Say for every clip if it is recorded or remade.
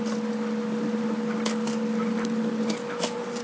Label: recorded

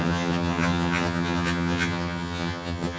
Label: remade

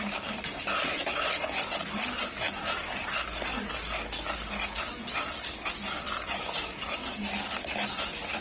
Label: recorded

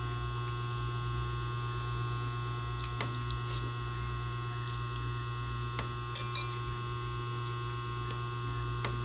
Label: recorded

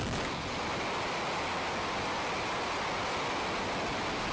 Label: recorded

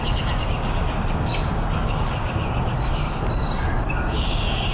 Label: remade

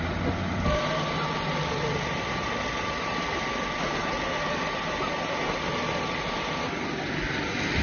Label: recorded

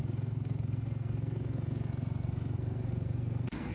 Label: remade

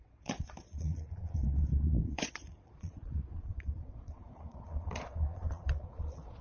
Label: remade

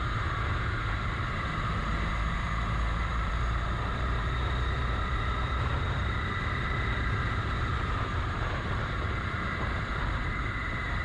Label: remade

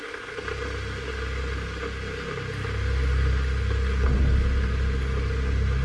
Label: recorded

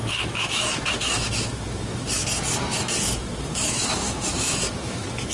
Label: remade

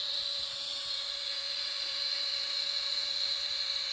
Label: remade